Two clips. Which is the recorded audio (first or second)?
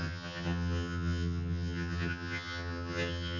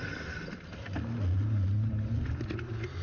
second